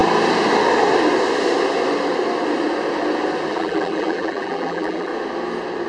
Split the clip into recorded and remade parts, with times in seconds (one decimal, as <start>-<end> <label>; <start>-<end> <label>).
0.0-3.5 recorded; 3.5-5.1 remade; 5.1-5.9 recorded